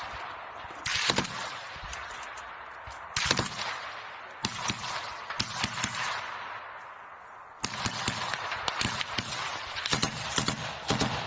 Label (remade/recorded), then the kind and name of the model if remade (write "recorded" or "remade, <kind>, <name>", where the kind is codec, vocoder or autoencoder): recorded